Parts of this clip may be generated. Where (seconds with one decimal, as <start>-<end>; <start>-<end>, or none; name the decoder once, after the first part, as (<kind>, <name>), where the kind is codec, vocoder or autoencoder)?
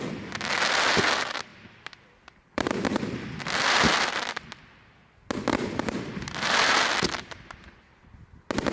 1.5-3.4 (vocoder, BigVGAN v2)